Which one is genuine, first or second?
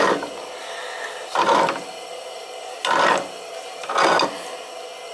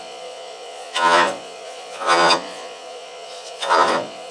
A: first